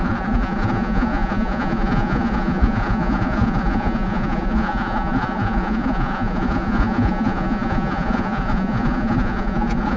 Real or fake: fake